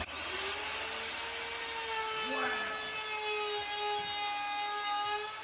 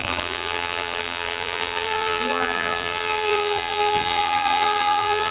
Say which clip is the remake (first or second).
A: second